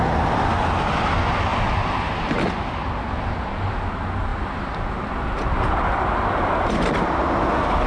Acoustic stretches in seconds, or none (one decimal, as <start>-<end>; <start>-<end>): 0.0-7.9